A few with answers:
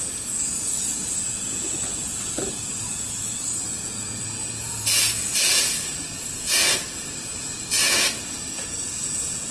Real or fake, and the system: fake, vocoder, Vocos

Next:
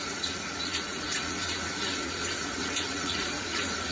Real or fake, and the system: fake, vocoder, Vocos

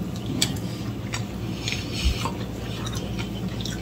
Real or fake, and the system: real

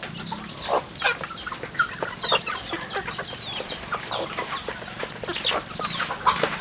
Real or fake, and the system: real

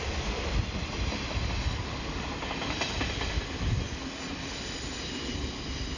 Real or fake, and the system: real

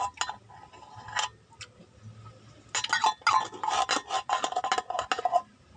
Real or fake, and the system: real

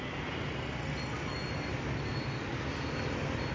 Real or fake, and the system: real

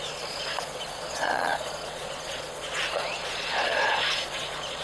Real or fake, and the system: fake, vocoder, Vocos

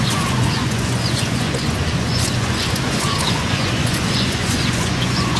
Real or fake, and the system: fake, vocoder, Vocos